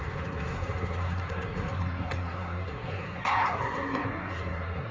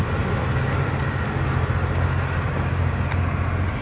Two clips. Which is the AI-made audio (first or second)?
first